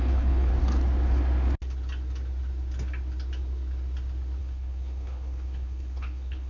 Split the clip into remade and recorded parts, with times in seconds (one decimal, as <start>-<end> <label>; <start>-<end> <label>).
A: 0.0-0.5 remade; 0.5-4.4 recorded; 4.4-6.5 remade